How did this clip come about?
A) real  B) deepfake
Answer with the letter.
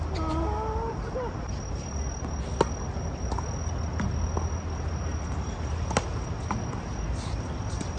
A